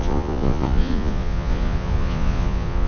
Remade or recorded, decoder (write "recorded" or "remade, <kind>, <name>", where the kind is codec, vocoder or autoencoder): remade, vocoder, Vocos